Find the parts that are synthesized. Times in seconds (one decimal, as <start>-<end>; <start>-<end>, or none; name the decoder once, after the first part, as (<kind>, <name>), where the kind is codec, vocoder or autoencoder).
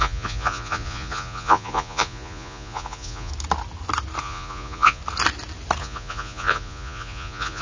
0.0-3.3 (vocoder, Vocos); 4.2-5.0; 5.8-7.6